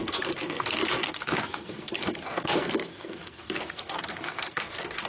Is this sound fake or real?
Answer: fake